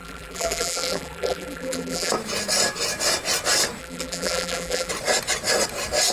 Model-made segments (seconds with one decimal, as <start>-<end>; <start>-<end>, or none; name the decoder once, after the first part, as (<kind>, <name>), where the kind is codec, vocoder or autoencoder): 0.0-2.1 (vocoder, BigVGAN v2); 3.8-4.9

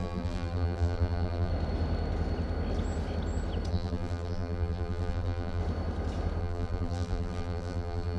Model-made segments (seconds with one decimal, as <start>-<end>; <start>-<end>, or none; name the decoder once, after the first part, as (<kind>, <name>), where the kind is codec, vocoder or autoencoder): 0.0-1.5 (vocoder, BigVGAN v2); 3.7-5.6; 6.4-8.2

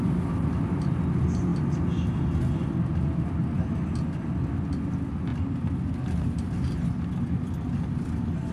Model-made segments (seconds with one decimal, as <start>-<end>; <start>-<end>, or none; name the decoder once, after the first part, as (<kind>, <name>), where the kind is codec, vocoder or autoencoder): none

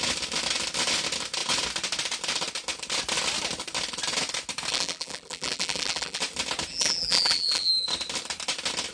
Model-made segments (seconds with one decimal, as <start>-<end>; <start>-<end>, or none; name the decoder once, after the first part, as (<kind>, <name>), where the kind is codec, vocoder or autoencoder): 4.7-6.2 (vocoder, BigVGAN v2); 6.7-7.7